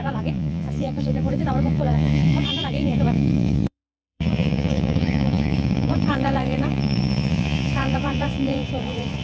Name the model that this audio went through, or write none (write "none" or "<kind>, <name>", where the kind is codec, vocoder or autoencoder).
vocoder, Vocos